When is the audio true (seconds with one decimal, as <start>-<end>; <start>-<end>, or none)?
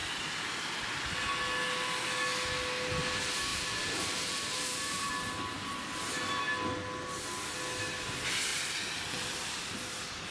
0.0-3.5; 5.1-8.5; 9.6-10.3